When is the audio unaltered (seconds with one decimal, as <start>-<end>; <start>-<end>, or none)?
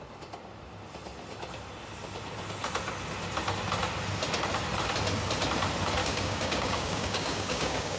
0.0-6.0